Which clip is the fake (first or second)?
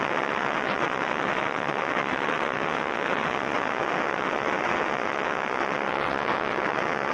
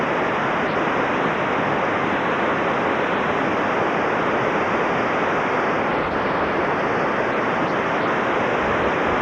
first